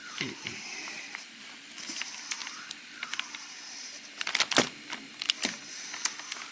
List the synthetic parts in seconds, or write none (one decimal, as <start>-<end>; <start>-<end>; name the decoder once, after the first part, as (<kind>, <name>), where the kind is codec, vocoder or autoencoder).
0.0-1.4 (vocoder, BigVGAN v2); 2.4-4.3